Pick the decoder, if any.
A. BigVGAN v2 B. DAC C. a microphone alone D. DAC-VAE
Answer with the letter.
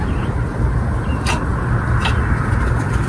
C